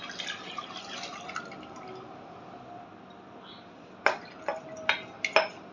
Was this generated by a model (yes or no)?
no